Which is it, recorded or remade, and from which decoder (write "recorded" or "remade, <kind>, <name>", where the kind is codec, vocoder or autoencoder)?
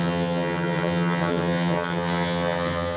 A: remade, vocoder, HiFi-GAN